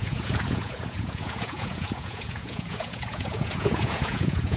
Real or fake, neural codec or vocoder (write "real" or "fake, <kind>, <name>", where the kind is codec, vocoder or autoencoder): fake, vocoder, Vocos